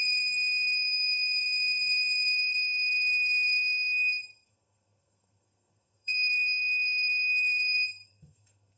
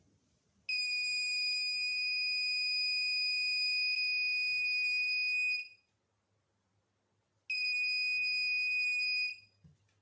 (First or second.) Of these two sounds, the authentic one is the second